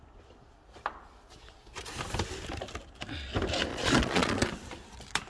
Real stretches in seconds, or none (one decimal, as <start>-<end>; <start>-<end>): 0.0-3.7; 4.5-5.3